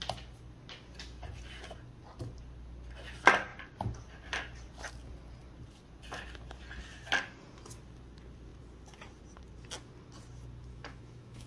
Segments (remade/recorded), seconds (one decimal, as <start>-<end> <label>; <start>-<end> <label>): 0.0-10.7 recorded; 10.7-11.5 remade